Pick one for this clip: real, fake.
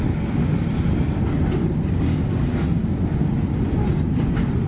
real